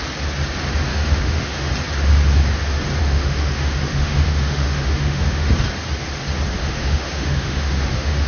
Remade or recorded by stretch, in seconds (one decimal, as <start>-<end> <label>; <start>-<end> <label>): 0.0-0.9 recorded; 0.9-1.7 remade; 1.7-3.0 recorded; 3.0-5.5 remade; 5.5-6.6 recorded; 6.6-8.3 remade